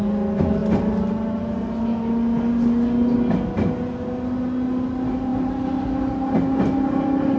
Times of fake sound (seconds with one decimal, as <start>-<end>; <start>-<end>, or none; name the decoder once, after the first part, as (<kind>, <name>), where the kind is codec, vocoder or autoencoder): none